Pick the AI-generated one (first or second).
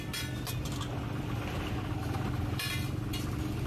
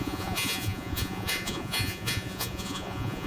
second